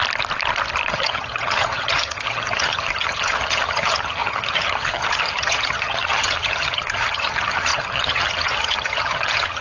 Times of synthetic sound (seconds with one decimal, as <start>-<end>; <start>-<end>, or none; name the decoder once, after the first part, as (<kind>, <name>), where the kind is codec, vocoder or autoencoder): 0.9-9.6 (vocoder, HiFi-GAN)

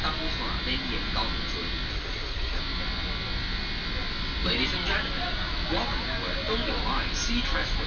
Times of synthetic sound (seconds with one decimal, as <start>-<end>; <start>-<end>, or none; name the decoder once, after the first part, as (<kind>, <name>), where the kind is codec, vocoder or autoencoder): 1.9-2.6 (codec, SNAC)

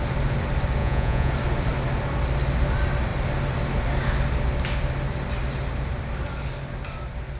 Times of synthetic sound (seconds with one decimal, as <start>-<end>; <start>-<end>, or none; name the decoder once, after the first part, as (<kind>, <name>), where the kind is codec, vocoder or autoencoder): 0.8-1.3 (vocoder, Vocos)

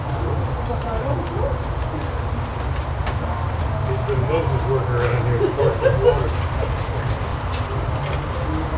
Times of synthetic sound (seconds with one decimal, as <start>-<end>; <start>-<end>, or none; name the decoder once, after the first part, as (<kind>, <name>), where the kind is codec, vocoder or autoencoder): 7.3-8.0 (vocoder, BigVGAN v2)

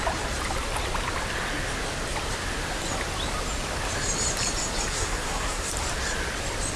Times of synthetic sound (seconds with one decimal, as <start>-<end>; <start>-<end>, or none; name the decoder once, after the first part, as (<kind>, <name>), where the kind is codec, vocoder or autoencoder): 4.9-5.7 (codec, SNAC)

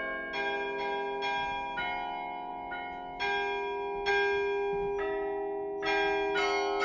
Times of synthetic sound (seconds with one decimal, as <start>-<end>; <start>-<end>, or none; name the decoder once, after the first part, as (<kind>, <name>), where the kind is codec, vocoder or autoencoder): none